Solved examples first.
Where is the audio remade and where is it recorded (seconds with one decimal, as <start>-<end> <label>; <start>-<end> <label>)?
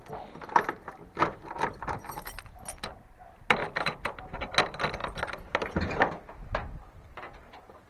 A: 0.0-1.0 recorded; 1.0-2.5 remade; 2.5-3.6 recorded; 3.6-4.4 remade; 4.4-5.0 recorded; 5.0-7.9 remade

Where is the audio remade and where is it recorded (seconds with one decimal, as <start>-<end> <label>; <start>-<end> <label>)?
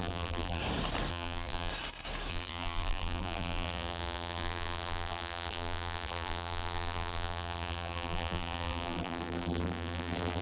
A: 0.0-0.6 remade; 0.6-1.1 recorded; 1.1-1.7 remade; 1.7-2.3 recorded; 2.3-10.4 remade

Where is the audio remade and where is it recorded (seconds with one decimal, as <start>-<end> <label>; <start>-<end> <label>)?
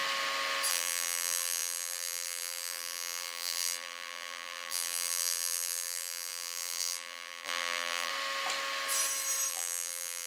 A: 0.0-0.7 recorded; 0.7-8.1 remade; 8.1-9.5 recorded; 9.5-10.3 remade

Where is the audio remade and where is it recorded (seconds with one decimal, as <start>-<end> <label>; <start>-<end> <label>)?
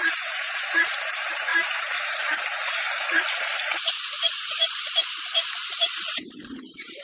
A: 0.0-7.0 remade